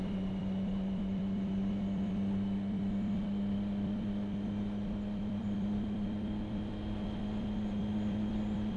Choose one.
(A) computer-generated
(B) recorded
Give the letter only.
A